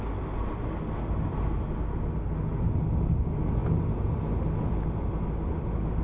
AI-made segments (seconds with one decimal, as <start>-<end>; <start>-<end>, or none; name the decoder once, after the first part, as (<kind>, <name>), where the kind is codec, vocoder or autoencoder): none